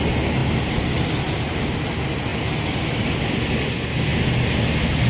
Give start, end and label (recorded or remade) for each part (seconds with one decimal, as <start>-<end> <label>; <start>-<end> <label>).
0.0-5.1 recorded